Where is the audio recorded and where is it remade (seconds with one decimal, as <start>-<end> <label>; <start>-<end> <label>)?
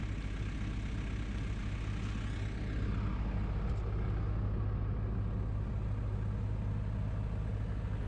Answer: 0.0-8.1 recorded